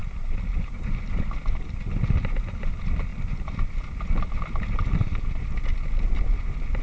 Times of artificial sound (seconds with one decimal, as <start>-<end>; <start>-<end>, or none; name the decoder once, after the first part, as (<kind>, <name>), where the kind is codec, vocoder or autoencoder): none